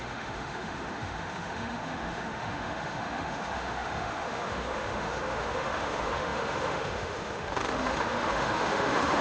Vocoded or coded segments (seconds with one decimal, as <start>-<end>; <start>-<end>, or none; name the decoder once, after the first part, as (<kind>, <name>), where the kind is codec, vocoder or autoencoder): 0.0-9.2 (autoencoder, DAC-VAE)